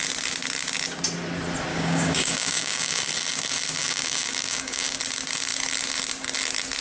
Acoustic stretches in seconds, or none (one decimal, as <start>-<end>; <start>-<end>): 0.0-1.7; 3.0-3.8; 5.0-6.8